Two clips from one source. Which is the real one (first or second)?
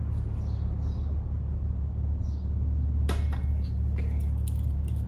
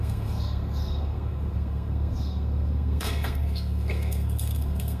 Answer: first